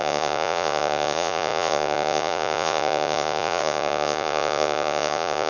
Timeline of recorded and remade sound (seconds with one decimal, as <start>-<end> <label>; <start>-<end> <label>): 0.0-5.5 remade